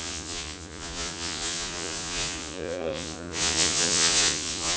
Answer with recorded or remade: remade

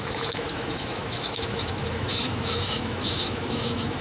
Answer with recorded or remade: remade